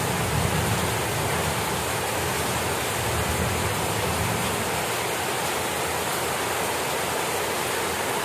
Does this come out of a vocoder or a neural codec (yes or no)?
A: no